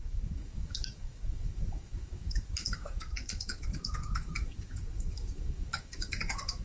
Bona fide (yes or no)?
no